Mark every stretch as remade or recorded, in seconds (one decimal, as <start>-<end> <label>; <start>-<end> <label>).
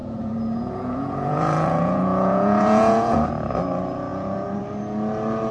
0.0-3.3 remade; 3.3-4.1 recorded; 4.1-4.6 remade; 4.6-5.5 recorded